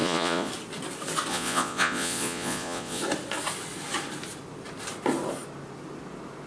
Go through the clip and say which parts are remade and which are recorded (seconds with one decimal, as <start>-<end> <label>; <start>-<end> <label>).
0.0-0.5 remade; 0.5-1.3 recorded; 1.3-3.0 remade; 3.0-6.5 recorded